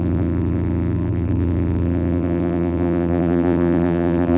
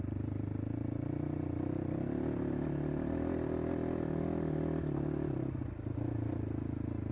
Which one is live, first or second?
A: second